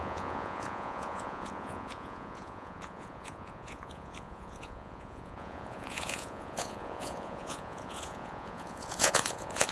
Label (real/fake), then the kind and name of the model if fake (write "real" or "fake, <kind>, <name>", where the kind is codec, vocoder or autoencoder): fake, vocoder, Vocos